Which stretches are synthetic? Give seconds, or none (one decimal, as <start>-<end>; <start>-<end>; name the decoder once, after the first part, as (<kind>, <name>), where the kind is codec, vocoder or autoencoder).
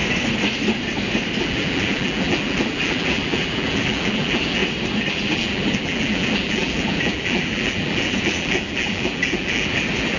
1.4-4.6 (vocoder, BigVGAN v2); 5.1-10.2